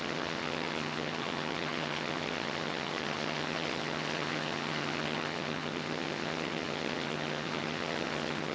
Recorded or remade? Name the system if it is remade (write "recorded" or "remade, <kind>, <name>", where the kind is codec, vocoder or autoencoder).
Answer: remade, vocoder, HiFi-GAN